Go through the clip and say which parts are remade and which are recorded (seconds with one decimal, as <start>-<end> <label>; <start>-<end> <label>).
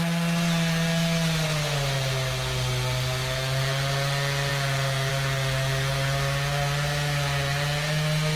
0.0-8.4 recorded